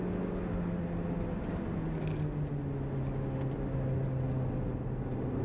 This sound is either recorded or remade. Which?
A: recorded